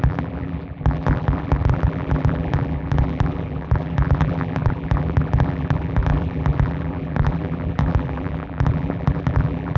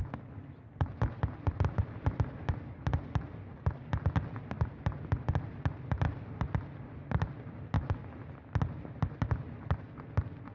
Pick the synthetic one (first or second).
first